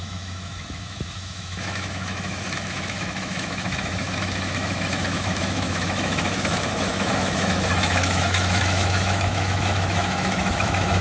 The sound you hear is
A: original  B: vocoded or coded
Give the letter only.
B